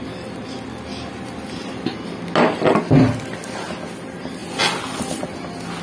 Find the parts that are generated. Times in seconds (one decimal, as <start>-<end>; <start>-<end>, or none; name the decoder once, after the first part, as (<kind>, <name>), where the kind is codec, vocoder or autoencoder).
none